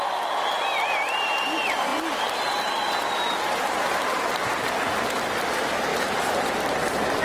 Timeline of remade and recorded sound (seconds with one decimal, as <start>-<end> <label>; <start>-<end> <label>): 0.0-1.9 recorded; 1.9-4.6 remade; 4.6-5.9 recorded; 5.9-6.5 remade; 6.5-7.2 recorded